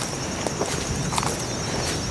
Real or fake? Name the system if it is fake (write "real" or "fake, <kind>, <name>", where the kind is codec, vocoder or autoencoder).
real